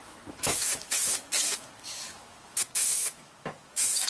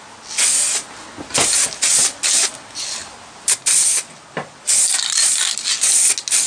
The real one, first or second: second